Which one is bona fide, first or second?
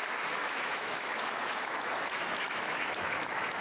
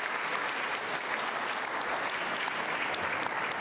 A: second